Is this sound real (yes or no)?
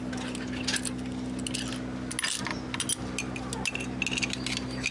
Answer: yes